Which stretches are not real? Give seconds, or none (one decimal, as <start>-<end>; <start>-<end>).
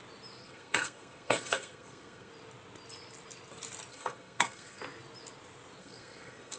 0.4-2.3; 3.9-4.8; 5.8-6.6